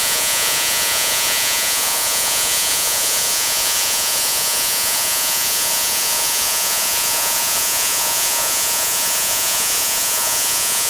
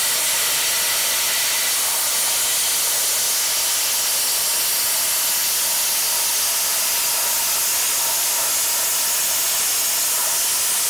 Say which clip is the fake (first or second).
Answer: first